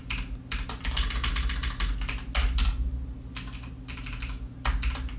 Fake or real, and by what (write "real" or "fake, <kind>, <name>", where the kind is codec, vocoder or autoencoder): real